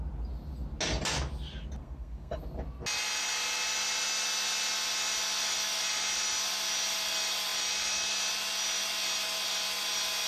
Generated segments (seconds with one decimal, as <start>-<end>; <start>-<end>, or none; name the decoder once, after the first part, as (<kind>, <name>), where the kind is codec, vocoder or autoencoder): 1.8-2.4 (codec, SNAC)